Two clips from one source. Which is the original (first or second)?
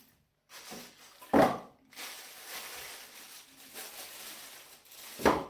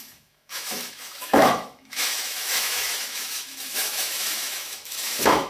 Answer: first